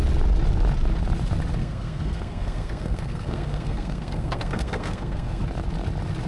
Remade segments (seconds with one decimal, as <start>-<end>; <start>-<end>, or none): 1.6-5.4